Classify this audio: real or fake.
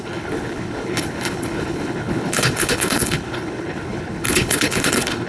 fake